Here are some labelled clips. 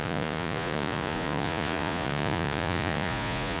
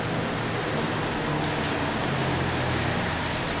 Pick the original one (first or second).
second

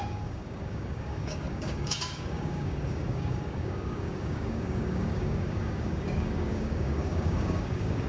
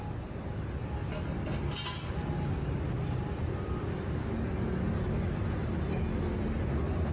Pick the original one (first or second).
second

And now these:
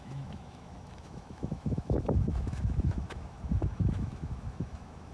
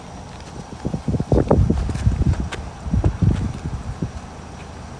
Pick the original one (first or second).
second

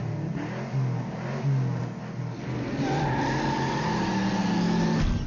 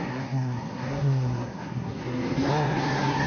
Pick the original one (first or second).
first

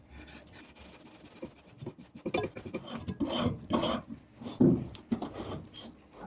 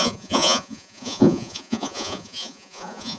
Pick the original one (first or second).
first